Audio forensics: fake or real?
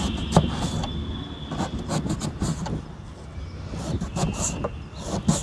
real